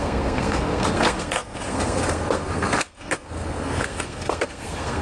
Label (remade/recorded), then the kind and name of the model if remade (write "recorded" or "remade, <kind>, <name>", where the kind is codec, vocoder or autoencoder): remade, codec, SNAC